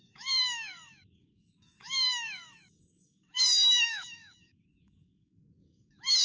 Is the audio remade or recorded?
remade